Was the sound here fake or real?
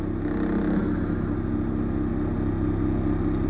real